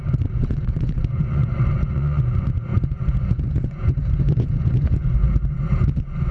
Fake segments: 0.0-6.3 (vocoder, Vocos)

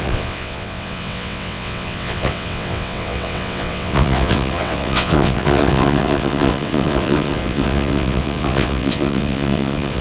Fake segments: 0.0-10.0 (vocoder, WaveNeXt)

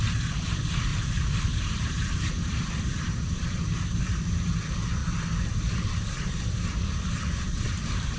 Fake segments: 0.0-5.0 (vocoder, BigVGAN v2); 5.9-8.2

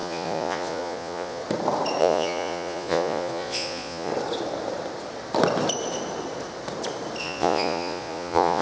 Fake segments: 0.0-1.4 (vocoder, Vocos); 2.0-4.1; 7.2-8.6

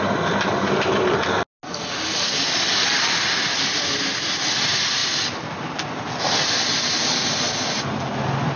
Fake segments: none